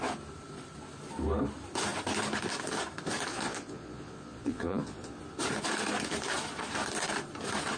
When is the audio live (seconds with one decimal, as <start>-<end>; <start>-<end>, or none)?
0.0-3.3; 5.2-7.8